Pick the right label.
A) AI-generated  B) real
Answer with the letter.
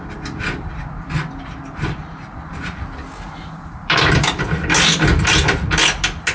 B